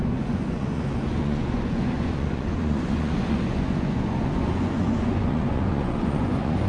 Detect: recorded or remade remade